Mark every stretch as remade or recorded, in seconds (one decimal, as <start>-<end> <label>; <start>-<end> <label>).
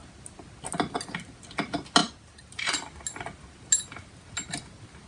0.0-2.0 recorded; 2.0-2.9 remade; 2.9-5.1 recorded